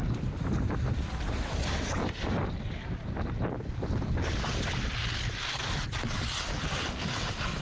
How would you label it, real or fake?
real